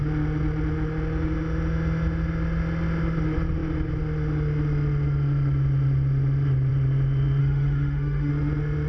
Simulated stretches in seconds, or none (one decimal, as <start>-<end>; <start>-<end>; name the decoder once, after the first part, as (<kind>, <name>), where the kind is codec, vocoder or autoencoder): 7.4-8.3 (autoencoder, DAC-VAE)